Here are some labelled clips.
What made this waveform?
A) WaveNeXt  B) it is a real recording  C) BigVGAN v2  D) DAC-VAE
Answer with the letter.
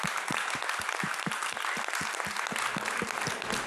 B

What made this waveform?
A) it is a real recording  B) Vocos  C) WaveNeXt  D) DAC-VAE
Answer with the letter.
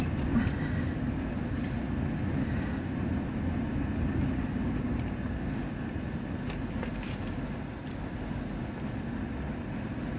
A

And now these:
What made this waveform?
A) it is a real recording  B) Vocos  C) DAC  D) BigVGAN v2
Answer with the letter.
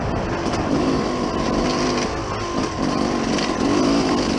A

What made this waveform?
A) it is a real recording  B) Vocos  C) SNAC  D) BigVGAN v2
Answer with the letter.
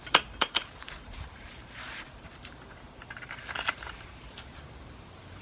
D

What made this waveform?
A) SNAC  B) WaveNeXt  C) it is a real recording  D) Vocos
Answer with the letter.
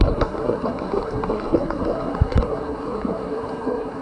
A